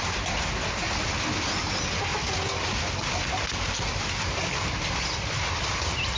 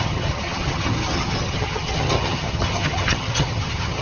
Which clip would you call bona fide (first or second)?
first